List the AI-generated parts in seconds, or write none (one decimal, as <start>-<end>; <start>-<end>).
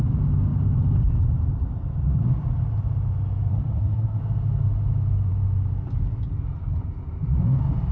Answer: 3.5-4.2